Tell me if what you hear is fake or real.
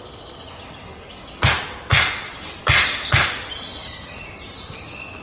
real